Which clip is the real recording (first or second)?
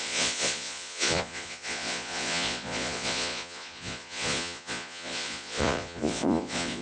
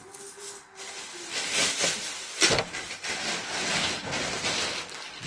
second